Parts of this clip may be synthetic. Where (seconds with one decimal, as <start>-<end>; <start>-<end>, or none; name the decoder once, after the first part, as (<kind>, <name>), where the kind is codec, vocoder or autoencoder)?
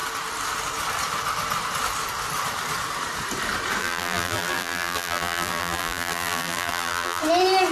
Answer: 3.8-7.2 (vocoder, BigVGAN v2)